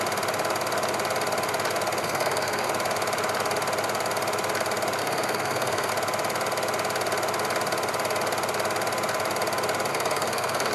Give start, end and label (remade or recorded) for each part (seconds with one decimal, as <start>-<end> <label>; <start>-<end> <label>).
0.0-2.0 recorded; 2.0-2.7 remade; 2.7-5.0 recorded; 5.0-5.9 remade; 5.9-9.9 recorded; 9.9-10.7 remade

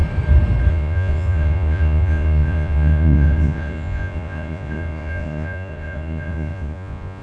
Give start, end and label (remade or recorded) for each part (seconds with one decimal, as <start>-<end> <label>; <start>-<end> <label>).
0.0-0.7 recorded; 0.7-7.2 remade

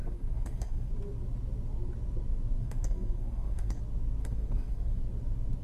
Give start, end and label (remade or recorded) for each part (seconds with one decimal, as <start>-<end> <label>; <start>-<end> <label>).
0.0-0.9 remade; 0.9-2.6 recorded; 2.6-3.8 remade; 3.8-4.2 recorded; 4.2-5.0 remade; 5.0-5.6 recorded